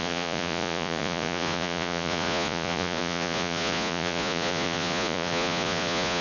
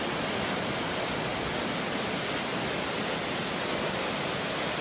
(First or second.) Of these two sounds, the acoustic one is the second